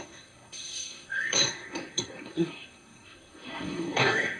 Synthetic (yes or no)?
yes